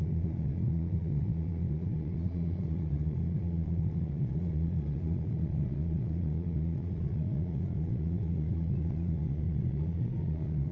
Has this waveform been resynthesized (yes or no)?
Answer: yes